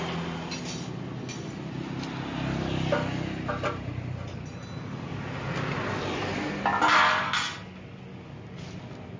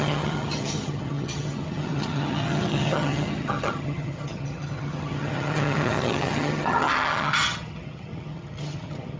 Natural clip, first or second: first